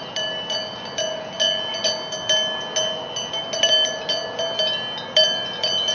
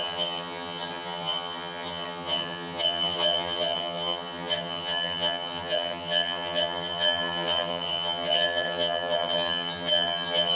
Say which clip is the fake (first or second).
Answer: second